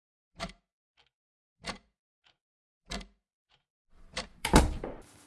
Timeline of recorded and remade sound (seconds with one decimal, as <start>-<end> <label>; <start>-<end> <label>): 0.0-0.6 remade; 0.6-1.4 recorded; 1.4-4.6 remade; 4.6-5.3 recorded